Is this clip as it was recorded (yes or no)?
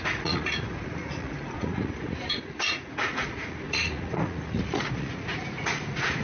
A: no